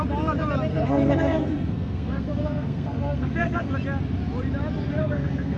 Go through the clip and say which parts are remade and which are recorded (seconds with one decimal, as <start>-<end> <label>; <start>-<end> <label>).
0.0-0.7 recorded; 0.7-3.7 remade; 3.7-5.0 recorded; 5.0-5.6 remade